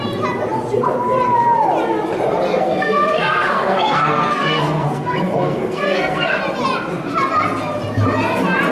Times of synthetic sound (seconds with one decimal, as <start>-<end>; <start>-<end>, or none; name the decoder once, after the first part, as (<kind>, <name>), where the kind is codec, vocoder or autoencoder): 2.5-6.4 (codec, SNAC)